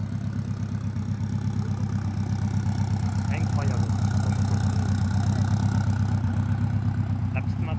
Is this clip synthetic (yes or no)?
no